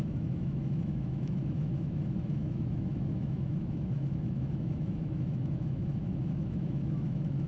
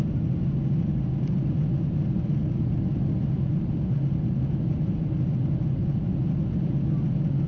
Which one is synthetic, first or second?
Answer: first